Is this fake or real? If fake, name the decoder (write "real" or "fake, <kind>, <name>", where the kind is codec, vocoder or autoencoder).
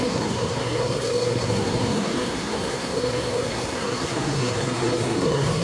fake, codec, SNAC